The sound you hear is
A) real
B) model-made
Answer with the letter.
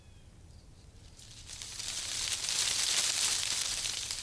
A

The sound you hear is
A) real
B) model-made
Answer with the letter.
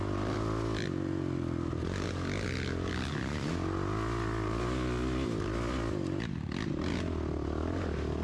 A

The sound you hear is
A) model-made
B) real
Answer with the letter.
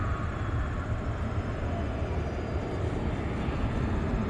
B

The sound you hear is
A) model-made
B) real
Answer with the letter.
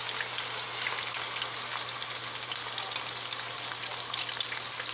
B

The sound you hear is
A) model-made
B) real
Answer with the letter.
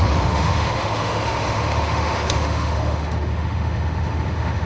A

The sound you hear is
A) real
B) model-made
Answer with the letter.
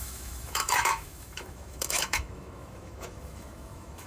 B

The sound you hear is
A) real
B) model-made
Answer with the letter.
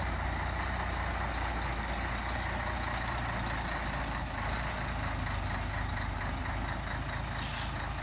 A